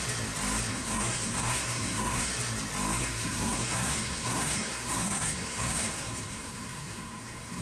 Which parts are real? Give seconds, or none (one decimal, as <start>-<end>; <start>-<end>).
0.0-0.7; 2.3-3.0